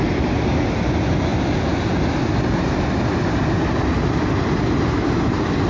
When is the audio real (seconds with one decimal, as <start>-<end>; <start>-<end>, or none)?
0.0-5.7